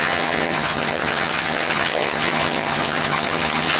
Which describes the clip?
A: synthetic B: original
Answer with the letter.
A